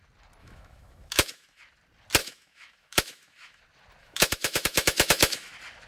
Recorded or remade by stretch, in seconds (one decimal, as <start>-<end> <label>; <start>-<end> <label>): 0.0-0.4 recorded; 0.4-1.6 remade; 1.6-2.2 recorded; 2.2-3.6 remade; 3.6-4.0 recorded; 4.0-5.5 remade; 5.5-5.9 recorded